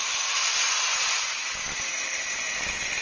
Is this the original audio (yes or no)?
yes